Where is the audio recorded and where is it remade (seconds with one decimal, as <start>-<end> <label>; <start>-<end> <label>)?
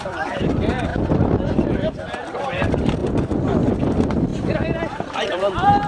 0.0-3.0 remade; 3.0-3.7 recorded; 3.7-5.9 remade